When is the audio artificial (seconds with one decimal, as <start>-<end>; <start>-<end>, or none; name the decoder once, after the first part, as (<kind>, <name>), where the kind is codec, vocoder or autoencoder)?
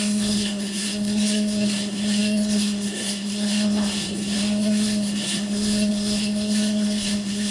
0.0-7.5 (codec, SNAC)